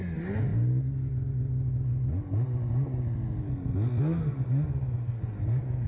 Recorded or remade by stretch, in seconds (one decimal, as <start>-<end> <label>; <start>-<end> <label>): 0.0-5.9 recorded